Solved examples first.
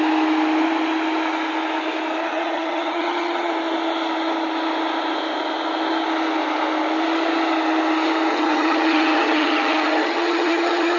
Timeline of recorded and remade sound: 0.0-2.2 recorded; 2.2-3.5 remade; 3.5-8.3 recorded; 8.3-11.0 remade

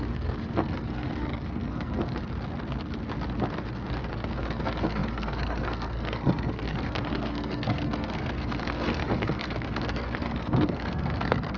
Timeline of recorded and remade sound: 0.0-2.2 remade; 2.2-4.1 recorded; 4.1-11.6 remade

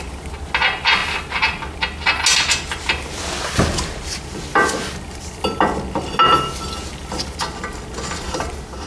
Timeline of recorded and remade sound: 0.0-8.9 recorded

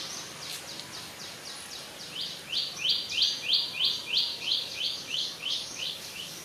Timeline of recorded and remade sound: 0.0-4.3 recorded; 4.3-6.4 remade